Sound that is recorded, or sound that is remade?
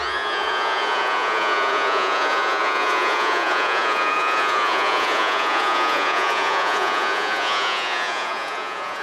remade